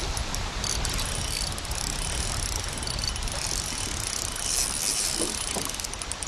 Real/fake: real